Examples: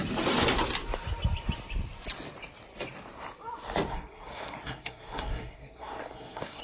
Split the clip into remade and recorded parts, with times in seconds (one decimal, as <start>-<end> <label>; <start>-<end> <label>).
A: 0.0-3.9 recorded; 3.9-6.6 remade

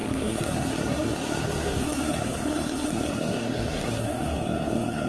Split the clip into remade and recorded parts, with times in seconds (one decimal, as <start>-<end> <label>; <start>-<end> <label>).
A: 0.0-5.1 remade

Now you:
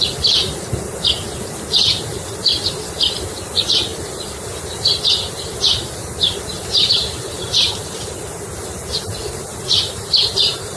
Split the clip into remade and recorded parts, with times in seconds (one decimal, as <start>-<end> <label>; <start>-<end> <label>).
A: 0.0-6.5 recorded; 6.5-8.1 remade; 8.1-10.8 recorded

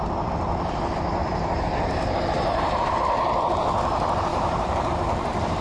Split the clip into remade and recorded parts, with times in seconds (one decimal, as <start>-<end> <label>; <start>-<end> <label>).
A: 0.0-1.2 recorded; 1.2-2.9 remade; 2.9-4.3 recorded; 4.3-5.6 remade

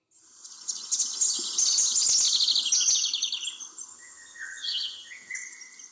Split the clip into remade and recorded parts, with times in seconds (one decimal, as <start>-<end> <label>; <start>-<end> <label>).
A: 0.0-3.9 recorded; 3.9-5.3 remade; 5.3-5.9 recorded

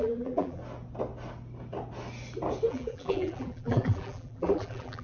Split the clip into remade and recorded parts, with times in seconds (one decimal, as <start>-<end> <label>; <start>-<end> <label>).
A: 0.0-0.6 remade; 0.6-2.7 recorded; 2.7-5.0 remade